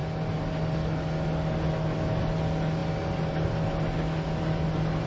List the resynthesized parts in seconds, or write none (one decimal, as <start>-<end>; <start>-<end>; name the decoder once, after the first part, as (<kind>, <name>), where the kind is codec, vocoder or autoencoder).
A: none